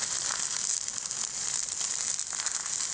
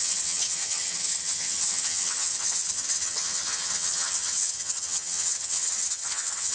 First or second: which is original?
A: first